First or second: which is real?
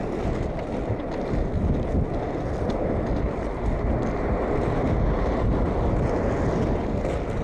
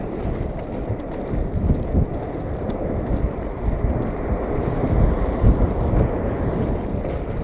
first